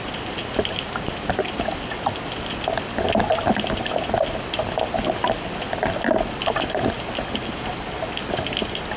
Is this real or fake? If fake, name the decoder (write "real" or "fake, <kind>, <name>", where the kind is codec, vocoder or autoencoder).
real